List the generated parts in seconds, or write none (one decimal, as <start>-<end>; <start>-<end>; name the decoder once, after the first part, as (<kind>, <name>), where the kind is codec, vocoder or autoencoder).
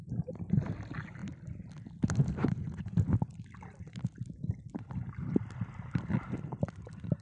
none